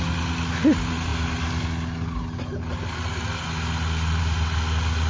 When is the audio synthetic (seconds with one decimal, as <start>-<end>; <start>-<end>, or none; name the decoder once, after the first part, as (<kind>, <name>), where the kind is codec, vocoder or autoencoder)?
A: none